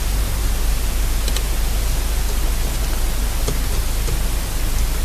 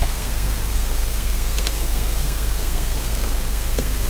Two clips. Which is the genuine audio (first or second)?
first